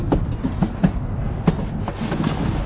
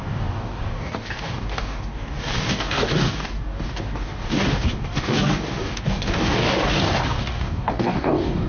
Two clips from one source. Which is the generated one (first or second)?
second